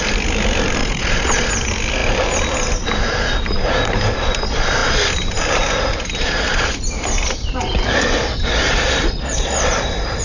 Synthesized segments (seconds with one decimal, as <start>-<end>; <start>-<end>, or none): 0.8-1.5; 9.0-9.6